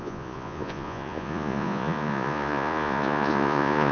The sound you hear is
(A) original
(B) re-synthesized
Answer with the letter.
B